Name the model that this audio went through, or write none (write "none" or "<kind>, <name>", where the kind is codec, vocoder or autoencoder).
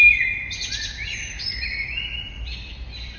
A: none